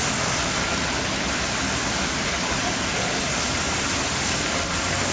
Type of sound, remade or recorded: recorded